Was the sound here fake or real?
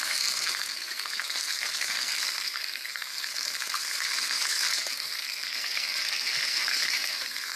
fake